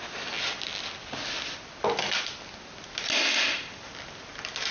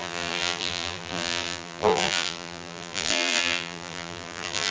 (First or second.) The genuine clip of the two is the first